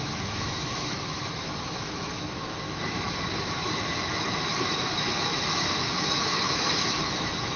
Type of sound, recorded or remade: remade